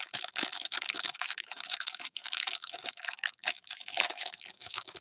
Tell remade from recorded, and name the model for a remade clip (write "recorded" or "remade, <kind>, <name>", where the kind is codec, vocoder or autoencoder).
remade, autoencoder, DAC-VAE